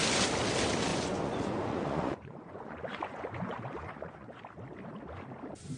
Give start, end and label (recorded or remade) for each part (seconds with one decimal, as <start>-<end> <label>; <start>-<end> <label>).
0.0-0.9 recorded; 0.9-4.4 remade; 4.4-5.8 recorded